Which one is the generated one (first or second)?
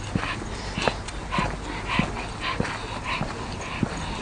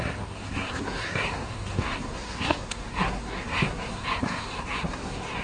second